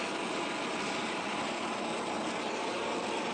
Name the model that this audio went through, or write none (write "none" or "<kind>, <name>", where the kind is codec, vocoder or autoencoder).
none